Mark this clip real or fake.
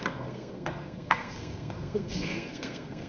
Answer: fake